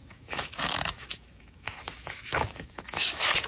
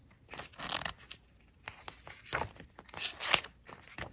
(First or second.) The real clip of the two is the second